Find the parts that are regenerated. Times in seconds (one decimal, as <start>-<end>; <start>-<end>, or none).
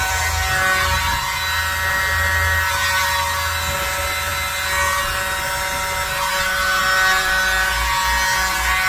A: none